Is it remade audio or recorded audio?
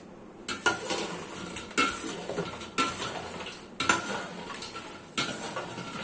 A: recorded